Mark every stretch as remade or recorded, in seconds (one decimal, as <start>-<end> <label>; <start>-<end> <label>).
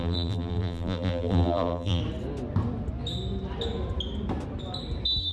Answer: 0.0-2.0 remade; 2.0-5.3 recorded